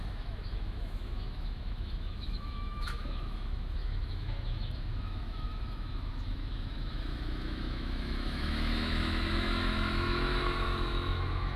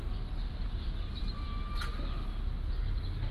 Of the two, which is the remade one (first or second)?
first